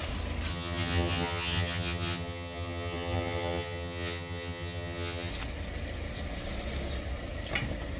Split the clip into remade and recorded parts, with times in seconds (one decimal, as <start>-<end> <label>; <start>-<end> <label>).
0.0-0.5 recorded; 0.5-5.3 remade; 5.3-8.0 recorded